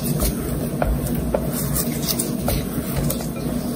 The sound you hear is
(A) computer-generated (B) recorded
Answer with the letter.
B